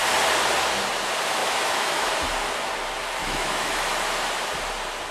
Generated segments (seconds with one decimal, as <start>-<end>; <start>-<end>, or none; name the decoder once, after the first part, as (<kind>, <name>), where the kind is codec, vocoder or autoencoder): 1.4-2.1 (autoencoder, DAC-VAE); 3.2-3.9